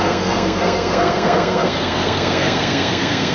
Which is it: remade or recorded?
remade